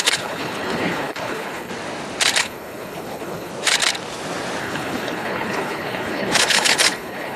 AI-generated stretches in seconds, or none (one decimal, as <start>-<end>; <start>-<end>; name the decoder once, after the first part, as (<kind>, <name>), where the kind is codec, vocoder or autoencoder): 0.0-1.7 (codec, HILCodec); 2.4-3.5; 4.6-7.4